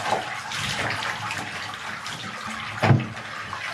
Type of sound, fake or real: real